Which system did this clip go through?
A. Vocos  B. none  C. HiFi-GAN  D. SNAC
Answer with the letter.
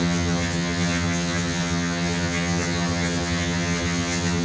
C